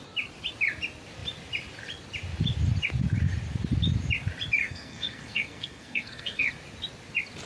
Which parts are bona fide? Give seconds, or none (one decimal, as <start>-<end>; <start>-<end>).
0.0-4.6; 6.5-7.5